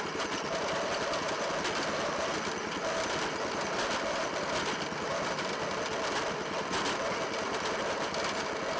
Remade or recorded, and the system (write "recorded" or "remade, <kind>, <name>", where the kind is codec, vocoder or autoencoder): recorded